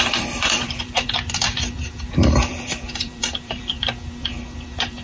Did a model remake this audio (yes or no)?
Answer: yes